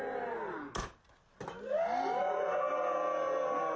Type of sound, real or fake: real